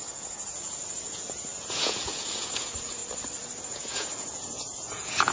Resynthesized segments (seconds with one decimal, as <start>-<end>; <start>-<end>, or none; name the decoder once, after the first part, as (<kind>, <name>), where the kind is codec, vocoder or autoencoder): 0.0-3.0 (vocoder, Vocos); 3.6-5.3